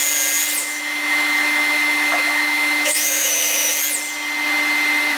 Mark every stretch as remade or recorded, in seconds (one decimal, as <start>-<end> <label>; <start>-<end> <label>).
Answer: 0.0-0.6 recorded; 0.6-3.7 remade; 3.7-5.2 recorded